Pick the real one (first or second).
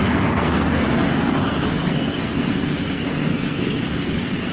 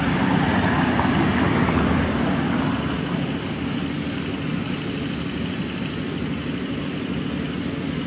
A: second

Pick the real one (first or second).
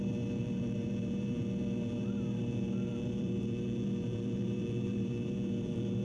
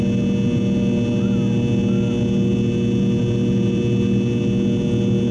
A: second